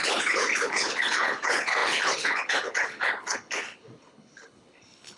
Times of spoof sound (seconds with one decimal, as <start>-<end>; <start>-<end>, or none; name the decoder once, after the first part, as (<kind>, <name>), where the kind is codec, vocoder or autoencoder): 0.0-5.2 (codec, HILCodec)